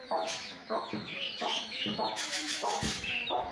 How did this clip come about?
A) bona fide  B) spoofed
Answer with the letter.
B